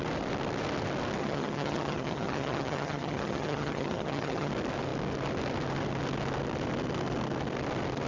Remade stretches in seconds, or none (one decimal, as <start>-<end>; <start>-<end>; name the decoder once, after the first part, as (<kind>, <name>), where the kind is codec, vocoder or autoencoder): 1.2-4.5 (vocoder, HiFi-GAN)